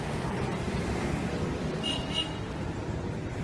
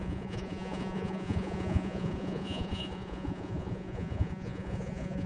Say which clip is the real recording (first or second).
first